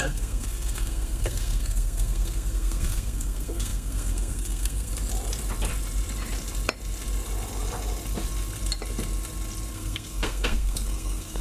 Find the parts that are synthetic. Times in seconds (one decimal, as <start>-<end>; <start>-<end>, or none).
0.0-4.9; 9.7-11.4